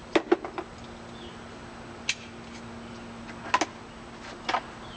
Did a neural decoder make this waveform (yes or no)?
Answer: no